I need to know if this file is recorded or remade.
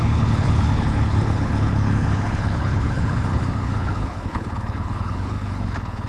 remade